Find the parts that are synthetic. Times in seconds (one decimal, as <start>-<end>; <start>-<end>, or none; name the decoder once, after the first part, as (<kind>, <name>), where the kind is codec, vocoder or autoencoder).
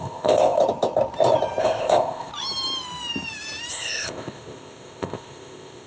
0.0-0.6 (codec, ZipCodec); 1.6-2.3; 3.7-5.9